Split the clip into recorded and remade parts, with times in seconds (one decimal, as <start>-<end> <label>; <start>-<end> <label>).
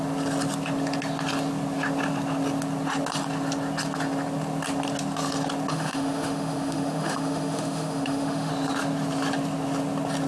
0.0-5.7 recorded; 5.7-8.5 remade; 8.5-10.3 recorded